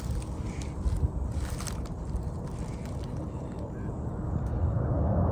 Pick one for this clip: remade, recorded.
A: recorded